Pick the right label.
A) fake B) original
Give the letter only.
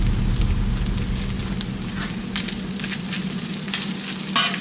B